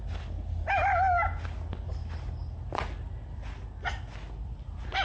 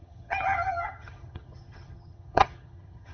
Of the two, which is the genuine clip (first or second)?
first